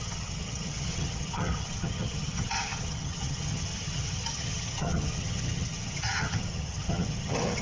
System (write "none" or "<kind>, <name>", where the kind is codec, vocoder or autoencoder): vocoder, HiFi-GAN